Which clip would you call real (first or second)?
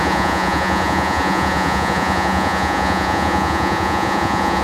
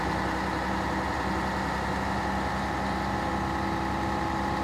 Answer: second